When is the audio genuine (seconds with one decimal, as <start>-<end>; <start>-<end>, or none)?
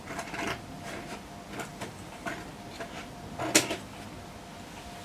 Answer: 0.0-1.7; 2.3-5.0